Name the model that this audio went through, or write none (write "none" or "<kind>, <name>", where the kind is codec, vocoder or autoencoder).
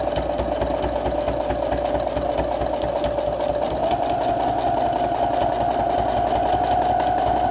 none